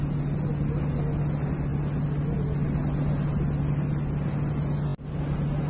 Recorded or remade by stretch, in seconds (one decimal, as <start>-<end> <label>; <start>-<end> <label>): 0.0-5.7 recorded